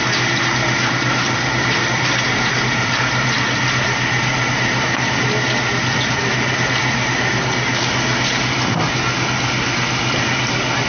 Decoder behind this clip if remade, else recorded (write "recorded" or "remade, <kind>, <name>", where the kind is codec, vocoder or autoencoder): recorded